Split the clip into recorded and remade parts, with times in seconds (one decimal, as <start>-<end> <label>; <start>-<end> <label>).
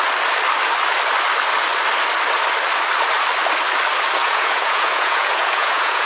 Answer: 0.0-4.2 recorded; 4.2-6.1 remade